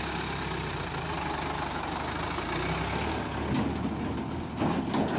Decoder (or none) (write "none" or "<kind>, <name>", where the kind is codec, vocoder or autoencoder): none